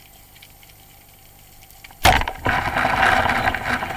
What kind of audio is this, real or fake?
real